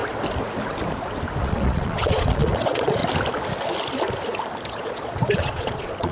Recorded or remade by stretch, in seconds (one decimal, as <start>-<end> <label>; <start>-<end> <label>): 0.0-1.4 recorded; 1.4-3.0 remade; 3.0-4.7 recorded; 4.7-6.1 remade